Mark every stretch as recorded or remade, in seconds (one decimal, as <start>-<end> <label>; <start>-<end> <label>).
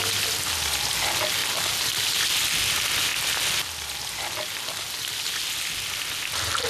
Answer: 0.0-6.7 recorded